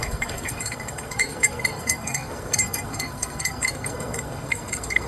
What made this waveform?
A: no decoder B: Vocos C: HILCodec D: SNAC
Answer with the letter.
D